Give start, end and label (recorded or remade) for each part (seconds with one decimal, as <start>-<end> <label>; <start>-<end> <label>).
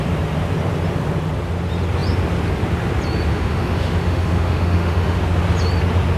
0.0-3.3 recorded; 3.3-5.2 remade; 5.2-6.2 recorded